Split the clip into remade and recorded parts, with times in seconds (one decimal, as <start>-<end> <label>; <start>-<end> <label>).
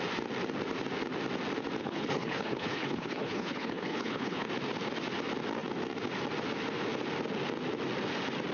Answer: 0.0-1.8 recorded; 1.8-4.5 remade; 4.5-8.5 recorded